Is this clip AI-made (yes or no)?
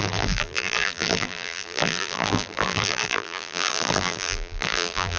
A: yes